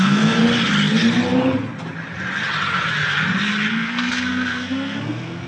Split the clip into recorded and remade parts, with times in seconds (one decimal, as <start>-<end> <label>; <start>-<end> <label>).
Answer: 0.0-0.4 remade; 0.4-3.7 recorded; 3.7-5.5 remade